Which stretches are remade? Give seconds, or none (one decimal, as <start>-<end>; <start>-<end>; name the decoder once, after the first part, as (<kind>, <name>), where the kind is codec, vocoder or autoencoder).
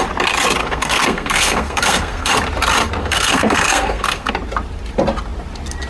0.6-2.3 (codec, SNAC); 3.0-4.3